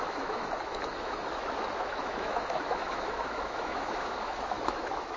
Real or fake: fake